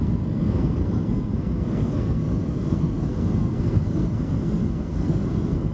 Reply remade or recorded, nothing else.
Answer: remade